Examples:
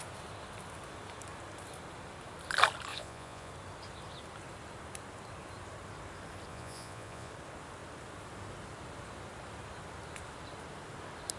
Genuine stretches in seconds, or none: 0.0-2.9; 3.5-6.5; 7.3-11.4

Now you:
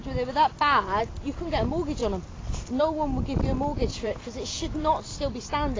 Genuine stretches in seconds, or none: 0.0-3.9; 4.9-5.8

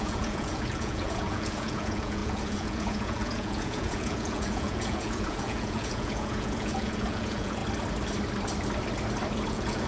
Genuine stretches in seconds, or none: 7.6-9.5

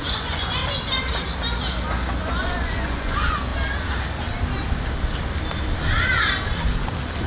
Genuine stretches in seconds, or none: 0.6-2.2; 3.5-7.3

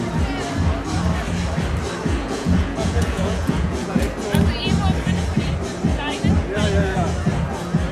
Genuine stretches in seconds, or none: 0.0-2.2; 4.0-7.9

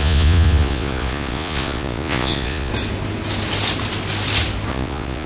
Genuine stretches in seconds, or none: 2.7-4.7

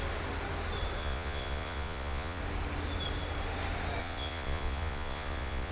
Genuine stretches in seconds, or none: 0.0-1.0; 2.4-4.0

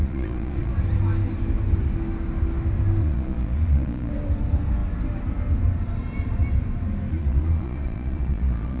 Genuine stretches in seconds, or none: 0.7-3.0; 4.1-7.1